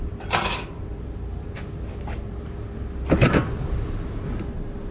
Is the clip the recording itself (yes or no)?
no